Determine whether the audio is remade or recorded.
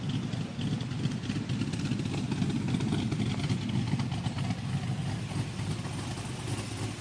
recorded